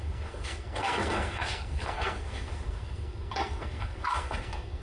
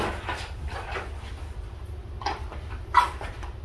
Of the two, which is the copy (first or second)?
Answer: first